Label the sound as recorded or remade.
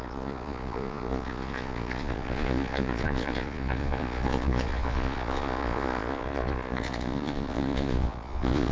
remade